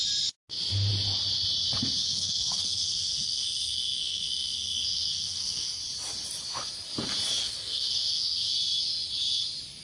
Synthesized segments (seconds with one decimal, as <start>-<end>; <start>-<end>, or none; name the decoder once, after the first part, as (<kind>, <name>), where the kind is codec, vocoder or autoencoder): 2.0-5.8 (codec, SNAC); 7.4-8.5